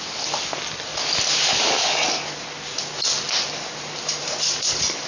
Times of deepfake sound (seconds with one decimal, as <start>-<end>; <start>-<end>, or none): none